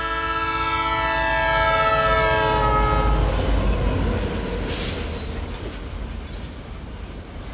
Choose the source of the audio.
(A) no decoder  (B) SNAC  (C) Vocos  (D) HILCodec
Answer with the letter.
A